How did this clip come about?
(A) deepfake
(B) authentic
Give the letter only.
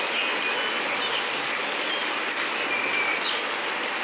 B